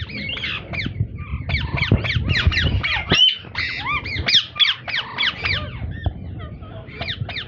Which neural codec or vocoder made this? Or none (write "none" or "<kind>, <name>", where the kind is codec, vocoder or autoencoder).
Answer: none